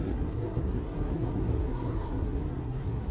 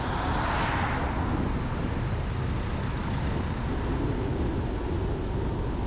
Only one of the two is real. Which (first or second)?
second